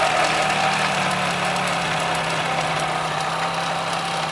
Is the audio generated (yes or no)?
no